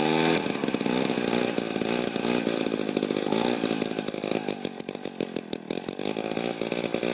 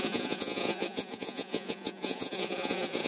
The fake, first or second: second